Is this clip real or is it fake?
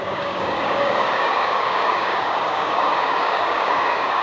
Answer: fake